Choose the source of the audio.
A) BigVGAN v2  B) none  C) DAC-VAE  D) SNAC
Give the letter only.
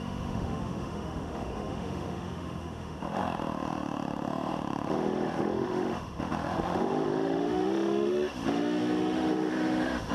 C